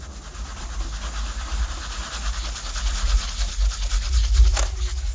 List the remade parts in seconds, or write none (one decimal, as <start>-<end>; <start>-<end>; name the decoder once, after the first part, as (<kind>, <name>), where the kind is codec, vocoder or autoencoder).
none